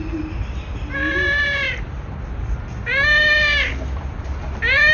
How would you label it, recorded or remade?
recorded